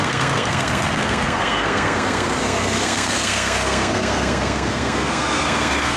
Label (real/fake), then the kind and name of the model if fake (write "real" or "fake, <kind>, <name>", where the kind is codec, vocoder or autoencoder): fake, codec, SNAC